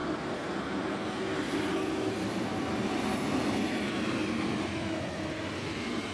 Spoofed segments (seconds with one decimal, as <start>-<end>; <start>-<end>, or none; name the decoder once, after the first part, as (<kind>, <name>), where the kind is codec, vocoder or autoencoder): none